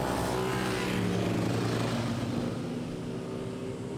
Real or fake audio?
real